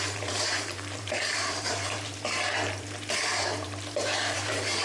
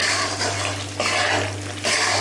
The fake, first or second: first